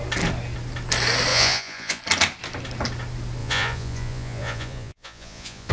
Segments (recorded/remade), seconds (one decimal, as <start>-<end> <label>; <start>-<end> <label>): 0.0-1.3 recorded; 1.3-2.0 remade; 2.0-3.4 recorded; 3.4-5.7 remade